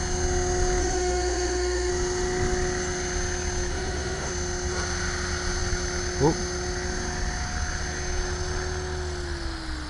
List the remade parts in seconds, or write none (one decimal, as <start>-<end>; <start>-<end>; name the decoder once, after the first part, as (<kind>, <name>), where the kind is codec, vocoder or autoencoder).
0.8-1.9 (autoencoder, DAC-VAE); 3.7-4.3